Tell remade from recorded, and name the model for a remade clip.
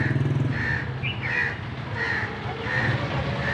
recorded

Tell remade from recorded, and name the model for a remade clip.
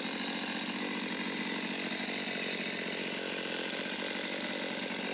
recorded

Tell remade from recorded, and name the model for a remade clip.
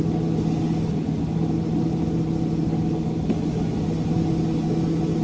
recorded